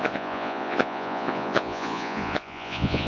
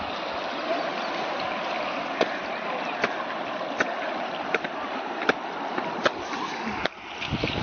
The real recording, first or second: second